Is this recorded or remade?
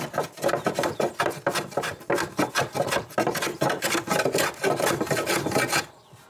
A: recorded